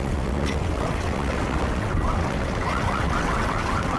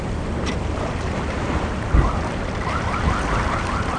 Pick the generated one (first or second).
first